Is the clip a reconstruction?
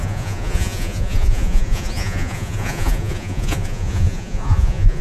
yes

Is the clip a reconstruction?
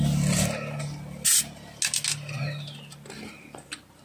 no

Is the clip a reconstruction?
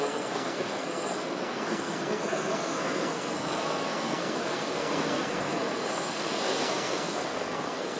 yes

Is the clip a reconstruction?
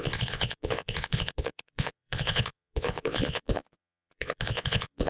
yes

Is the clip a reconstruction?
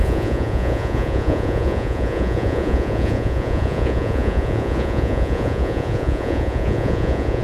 yes